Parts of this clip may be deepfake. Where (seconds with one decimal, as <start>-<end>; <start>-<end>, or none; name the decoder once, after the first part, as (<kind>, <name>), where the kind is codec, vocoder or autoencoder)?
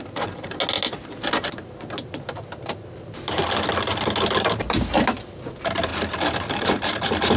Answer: none